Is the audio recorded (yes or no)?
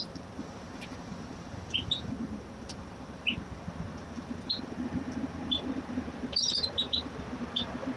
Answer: no